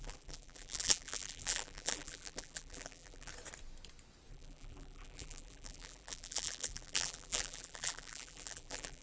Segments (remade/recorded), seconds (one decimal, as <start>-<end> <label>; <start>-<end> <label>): 0.0-3.3 remade; 3.3-4.3 recorded; 4.3-9.0 remade